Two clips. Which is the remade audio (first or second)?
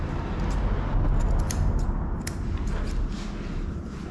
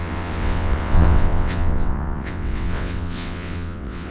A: second